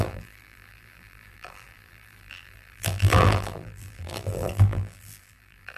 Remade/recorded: remade